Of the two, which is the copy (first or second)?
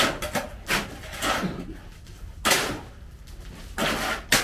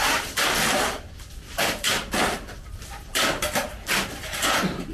second